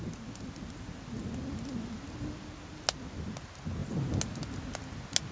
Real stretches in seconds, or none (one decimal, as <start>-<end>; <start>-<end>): 0.0-5.3